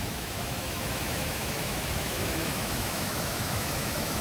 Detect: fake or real fake